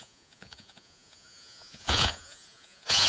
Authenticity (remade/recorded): remade